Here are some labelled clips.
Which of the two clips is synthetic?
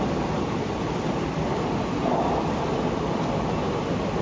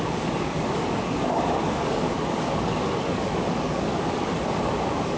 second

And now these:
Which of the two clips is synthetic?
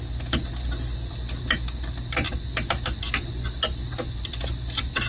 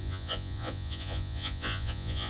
second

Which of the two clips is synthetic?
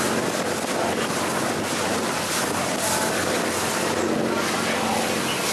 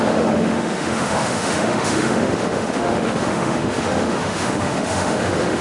second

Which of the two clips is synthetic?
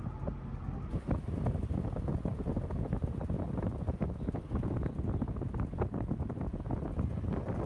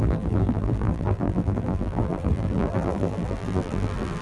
second